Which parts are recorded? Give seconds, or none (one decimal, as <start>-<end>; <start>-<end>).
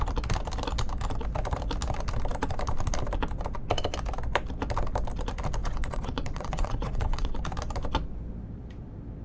0.0-5.6; 7.3-9.2